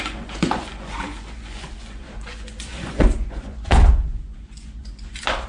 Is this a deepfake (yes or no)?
yes